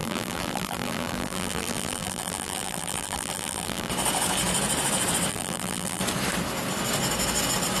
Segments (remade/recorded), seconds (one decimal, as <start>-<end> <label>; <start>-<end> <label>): 0.0-3.9 remade; 3.9-5.3 recorded; 5.3-6.0 remade; 6.0-7.8 recorded